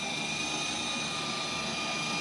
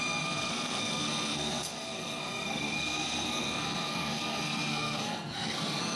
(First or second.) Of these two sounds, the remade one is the second